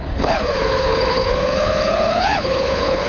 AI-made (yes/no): yes